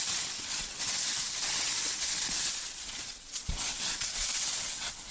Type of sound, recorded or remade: remade